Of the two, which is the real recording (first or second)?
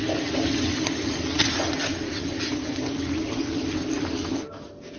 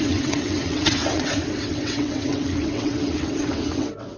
first